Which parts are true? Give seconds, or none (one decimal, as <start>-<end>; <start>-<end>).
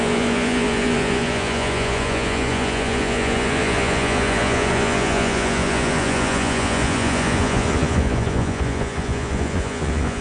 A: none